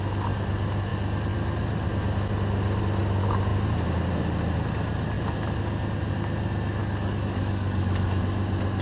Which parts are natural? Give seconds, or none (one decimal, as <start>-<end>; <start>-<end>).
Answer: 0.0-6.8; 8.2-8.8

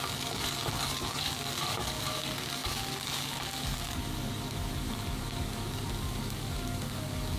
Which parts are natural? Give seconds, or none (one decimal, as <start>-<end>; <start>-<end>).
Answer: none

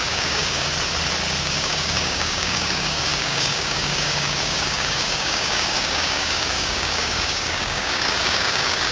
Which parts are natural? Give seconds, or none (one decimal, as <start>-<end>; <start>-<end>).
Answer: 0.7-1.4